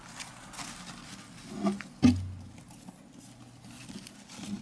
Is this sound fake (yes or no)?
no